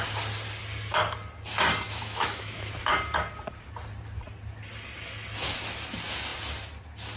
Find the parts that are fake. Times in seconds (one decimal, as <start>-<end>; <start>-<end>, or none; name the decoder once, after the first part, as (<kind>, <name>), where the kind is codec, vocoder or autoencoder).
2.0-2.7 (autoencoder, DAC-VAE)